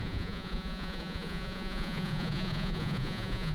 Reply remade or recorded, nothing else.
remade